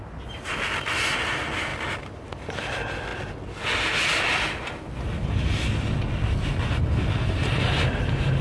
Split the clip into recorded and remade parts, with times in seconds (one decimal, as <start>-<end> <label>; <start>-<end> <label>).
0.0-1.7 recorded; 1.7-2.6 remade; 2.6-8.4 recorded